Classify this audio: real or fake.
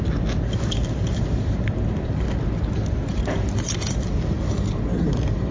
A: real